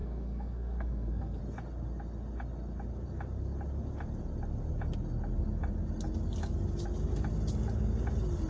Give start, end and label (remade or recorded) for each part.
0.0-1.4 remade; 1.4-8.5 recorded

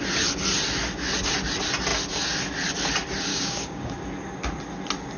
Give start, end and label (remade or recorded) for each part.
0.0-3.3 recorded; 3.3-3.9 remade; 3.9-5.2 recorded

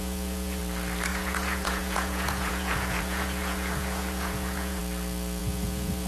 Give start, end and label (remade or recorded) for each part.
0.0-0.6 remade; 0.6-1.1 recorded; 1.1-4.8 remade; 4.8-5.4 recorded; 5.4-6.1 remade